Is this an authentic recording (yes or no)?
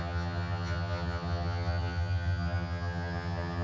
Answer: no